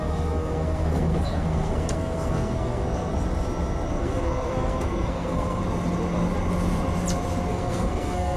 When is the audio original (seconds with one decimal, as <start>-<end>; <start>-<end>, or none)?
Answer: 3.1-3.9; 5.6-7.5